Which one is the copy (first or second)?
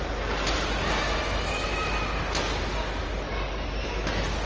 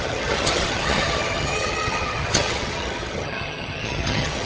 second